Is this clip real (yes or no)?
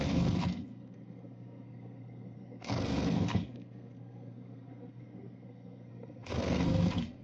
no